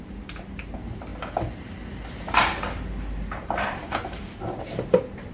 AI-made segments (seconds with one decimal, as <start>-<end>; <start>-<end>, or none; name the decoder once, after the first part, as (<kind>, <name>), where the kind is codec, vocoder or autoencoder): none